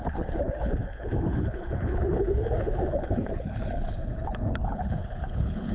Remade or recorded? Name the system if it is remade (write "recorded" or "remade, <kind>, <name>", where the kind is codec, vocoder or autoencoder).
remade, codec, HILCodec